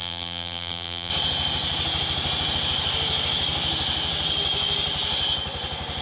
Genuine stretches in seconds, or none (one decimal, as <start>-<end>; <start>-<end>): 1.1-6.0